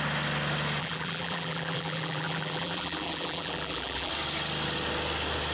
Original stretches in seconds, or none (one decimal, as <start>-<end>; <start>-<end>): 0.0-0.8; 4.1-5.5